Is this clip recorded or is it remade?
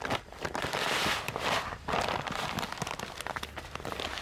recorded